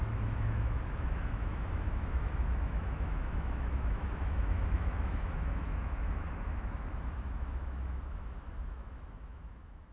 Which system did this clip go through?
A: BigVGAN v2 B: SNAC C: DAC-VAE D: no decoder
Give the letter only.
C